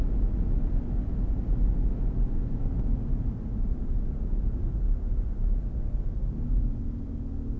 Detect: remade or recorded recorded